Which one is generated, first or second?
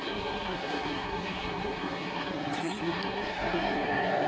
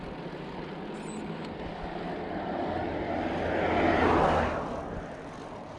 first